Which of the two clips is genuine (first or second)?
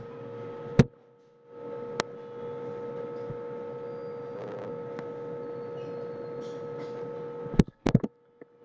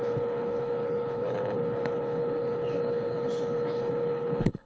first